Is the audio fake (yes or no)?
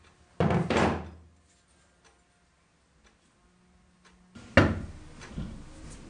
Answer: no